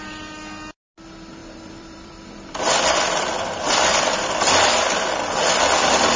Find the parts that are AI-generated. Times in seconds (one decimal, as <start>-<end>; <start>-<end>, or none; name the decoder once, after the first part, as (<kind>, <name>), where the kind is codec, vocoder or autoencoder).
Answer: 1.4-4.5 (vocoder, BigVGAN v2)